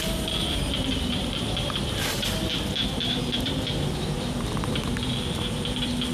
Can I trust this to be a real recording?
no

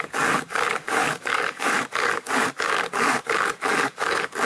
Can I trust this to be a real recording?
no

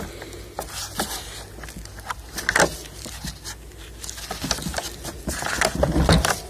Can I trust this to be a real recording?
yes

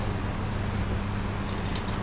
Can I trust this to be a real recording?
yes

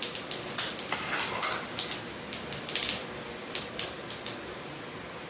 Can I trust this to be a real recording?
yes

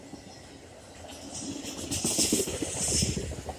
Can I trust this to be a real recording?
yes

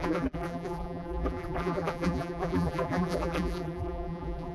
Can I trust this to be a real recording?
no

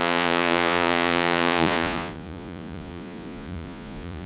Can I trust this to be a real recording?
no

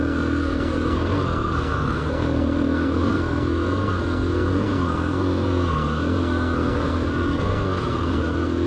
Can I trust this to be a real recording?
no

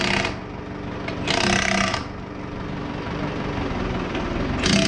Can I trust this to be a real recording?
yes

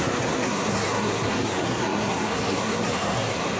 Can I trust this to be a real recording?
no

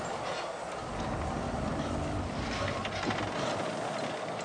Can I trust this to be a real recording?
yes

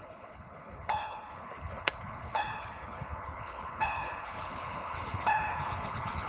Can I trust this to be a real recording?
no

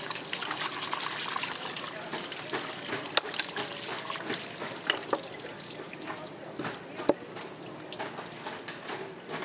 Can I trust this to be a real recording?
yes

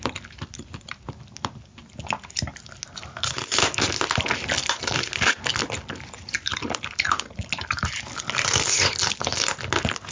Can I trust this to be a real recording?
yes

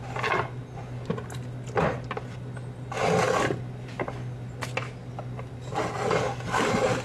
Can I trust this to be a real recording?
yes